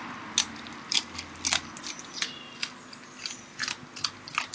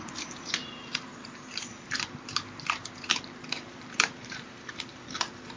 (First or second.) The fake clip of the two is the second